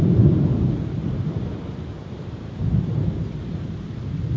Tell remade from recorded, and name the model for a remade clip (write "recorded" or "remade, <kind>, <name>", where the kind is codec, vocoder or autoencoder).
remade, vocoder, BigVGAN v2